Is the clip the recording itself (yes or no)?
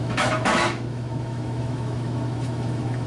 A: no